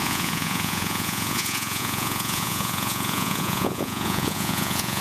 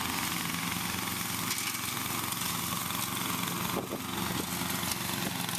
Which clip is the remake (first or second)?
first